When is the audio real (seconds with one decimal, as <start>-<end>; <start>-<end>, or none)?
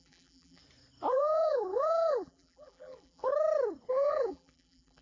0.6-1.1; 3.3-3.9